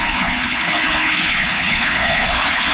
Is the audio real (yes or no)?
no